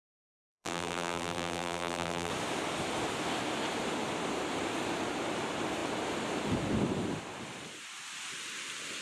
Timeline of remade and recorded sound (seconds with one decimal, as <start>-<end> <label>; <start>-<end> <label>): 0.0-2.3 remade; 2.3-9.0 recorded